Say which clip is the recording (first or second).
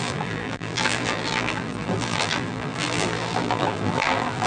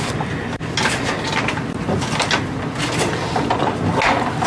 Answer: second